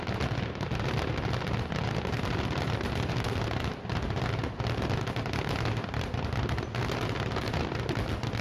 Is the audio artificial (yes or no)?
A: no